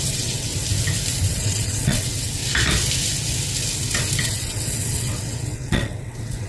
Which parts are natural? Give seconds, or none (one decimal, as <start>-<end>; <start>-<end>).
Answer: 0.5-1.3; 2.4-4.2